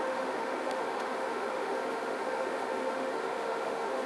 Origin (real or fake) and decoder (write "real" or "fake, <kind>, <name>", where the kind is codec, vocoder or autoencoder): fake, autoencoder, DAC-VAE